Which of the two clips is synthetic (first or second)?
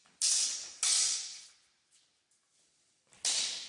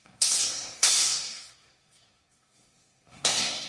second